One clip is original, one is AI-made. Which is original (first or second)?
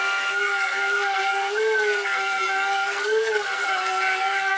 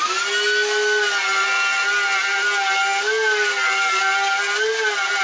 second